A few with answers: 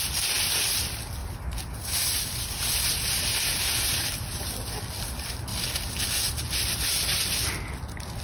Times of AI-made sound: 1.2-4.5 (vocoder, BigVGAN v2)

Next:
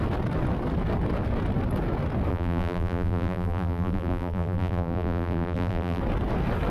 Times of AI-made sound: 2.3-6.0 (vocoder, BigVGAN v2)

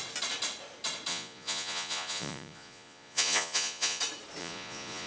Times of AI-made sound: 1.1-4.0 (vocoder, Vocos); 4.4-5.1

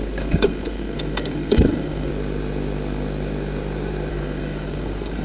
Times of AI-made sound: 0.0-2.1 (codec, SNAC); 4.1-5.2

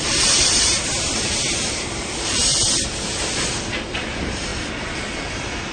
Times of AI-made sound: 0.0-2.5 (vocoder, BigVGAN v2); 4.0-4.5

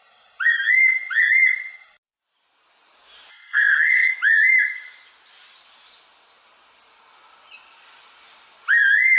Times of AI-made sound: 3.3-4.1 (codec, SNAC)

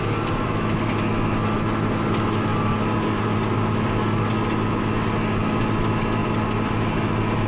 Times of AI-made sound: none

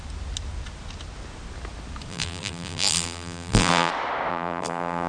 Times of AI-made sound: 2.1-3.9 (vocoder, BigVGAN v2); 4.3-5.1